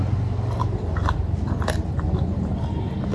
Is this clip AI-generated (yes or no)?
no